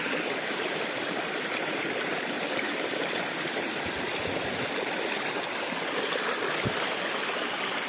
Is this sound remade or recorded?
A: recorded